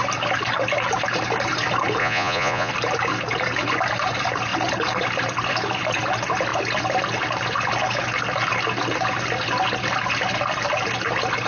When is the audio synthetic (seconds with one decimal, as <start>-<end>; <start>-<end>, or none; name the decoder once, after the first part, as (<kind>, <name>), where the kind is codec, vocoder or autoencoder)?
2.0-2.7 (vocoder, Vocos)